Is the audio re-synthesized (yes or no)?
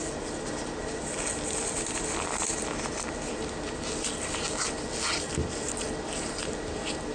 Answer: no